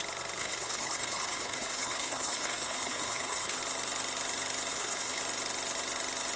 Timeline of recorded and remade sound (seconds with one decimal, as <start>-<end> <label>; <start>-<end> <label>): 0.0-0.4 recorded; 0.4-3.6 remade; 3.6-4.7 recorded; 4.7-5.2 remade; 5.2-6.4 recorded